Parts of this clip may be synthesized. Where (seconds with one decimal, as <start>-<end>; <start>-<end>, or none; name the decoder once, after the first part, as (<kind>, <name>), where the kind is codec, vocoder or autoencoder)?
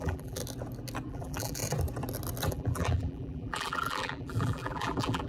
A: 0.0-0.4 (vocoder, BigVGAN v2); 1.1-1.6; 2.5-5.3